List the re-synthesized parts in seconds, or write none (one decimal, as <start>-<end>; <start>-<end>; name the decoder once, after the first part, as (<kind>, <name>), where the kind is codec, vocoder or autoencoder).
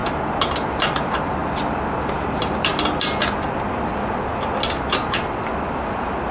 0.9-1.4 (vocoder, BigVGAN v2); 2.2-2.7